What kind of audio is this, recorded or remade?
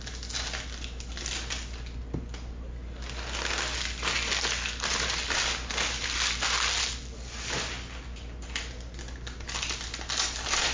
recorded